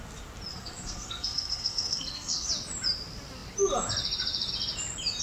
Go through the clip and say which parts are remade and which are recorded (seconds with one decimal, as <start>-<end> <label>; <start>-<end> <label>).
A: 0.0-0.5 recorded; 0.5-2.5 remade; 2.5-5.2 recorded